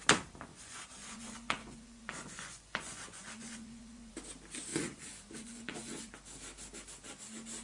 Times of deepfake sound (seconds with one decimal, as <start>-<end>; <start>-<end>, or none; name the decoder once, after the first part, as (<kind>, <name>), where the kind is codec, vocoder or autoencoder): 0.5-4.1 (vocoder, Vocos); 4.7-6.1